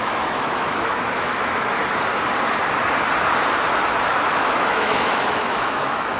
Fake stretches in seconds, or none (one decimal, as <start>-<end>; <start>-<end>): 0.0-1.8; 4.1-6.2